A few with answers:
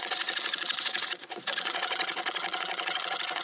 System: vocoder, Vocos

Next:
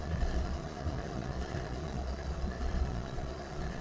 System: vocoder, Vocos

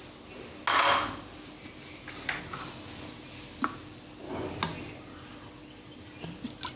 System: none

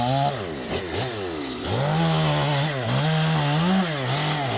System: none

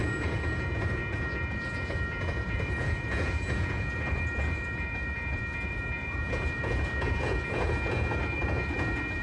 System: vocoder, Vocos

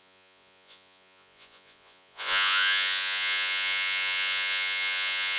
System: vocoder, Vocos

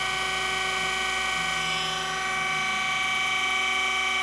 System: none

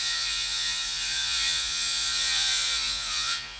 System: vocoder, Vocos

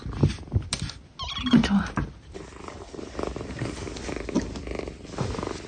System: none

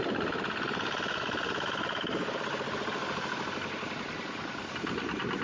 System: none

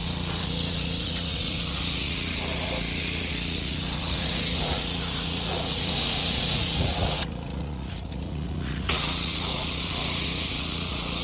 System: vocoder, Vocos